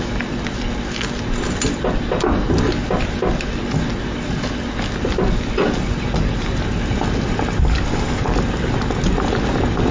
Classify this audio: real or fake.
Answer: real